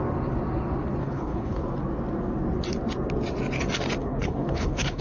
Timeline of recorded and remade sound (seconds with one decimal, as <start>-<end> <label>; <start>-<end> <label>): 0.0-1.0 recorded; 1.0-1.6 remade; 1.6-4.0 recorded; 4.0-5.0 remade